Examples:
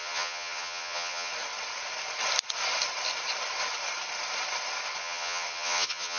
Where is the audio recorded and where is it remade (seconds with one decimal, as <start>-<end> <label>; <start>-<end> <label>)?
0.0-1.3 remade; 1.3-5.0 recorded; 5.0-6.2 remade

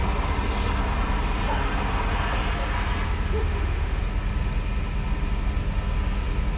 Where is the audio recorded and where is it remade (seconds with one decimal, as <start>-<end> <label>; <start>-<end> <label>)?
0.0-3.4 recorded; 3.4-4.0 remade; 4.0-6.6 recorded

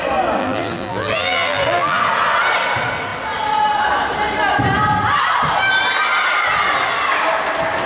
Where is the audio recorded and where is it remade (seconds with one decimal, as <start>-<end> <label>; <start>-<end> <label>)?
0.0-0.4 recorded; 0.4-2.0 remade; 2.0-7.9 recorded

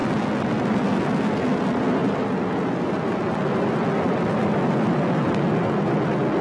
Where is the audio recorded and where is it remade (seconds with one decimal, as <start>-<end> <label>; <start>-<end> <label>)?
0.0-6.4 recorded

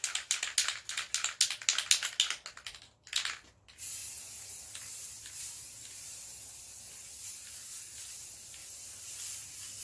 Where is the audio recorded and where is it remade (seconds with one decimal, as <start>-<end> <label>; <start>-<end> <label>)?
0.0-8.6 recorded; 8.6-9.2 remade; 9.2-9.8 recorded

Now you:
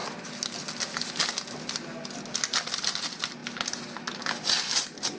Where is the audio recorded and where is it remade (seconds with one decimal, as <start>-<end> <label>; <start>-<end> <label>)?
0.0-5.2 recorded